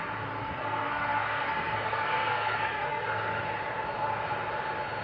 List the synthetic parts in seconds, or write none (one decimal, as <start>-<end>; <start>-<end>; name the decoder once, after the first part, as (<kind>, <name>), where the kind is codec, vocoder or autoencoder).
0.4-3.4 (codec, SNAC)